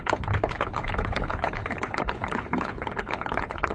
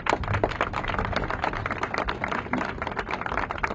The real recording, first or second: second